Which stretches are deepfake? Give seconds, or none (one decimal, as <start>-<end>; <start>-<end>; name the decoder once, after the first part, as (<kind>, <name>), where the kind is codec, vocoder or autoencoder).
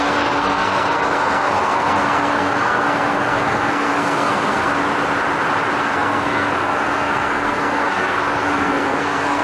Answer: 0.0-4.7 (codec, SNAC); 5.8-9.4